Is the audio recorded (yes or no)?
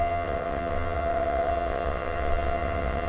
no